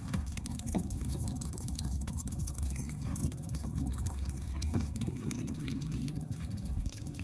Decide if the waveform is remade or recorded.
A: remade